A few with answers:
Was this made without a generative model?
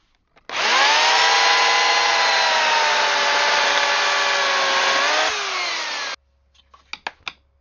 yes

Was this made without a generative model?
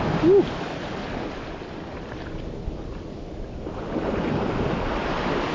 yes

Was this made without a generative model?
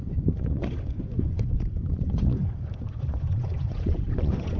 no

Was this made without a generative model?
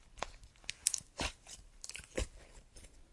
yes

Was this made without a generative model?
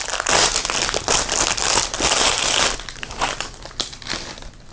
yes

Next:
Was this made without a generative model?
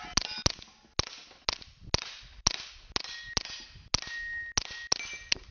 yes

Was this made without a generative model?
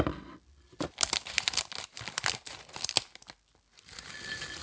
yes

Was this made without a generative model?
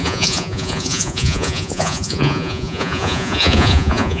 no